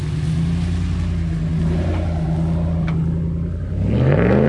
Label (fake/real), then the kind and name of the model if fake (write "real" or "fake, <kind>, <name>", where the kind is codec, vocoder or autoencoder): real